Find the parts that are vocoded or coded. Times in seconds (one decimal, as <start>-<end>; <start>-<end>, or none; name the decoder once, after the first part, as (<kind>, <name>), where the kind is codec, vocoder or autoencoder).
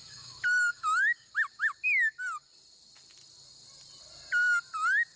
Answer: 0.0-1.3 (autoencoder, DAC-VAE)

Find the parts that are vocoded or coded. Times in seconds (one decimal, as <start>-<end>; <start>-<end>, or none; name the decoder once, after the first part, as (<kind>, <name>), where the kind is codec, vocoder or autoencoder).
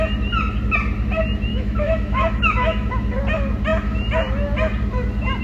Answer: 1.5-2.9 (autoencoder, DAC-VAE)